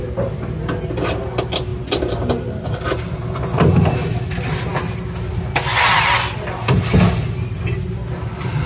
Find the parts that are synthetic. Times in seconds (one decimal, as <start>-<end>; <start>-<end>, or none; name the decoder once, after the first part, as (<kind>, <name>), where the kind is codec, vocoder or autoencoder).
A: none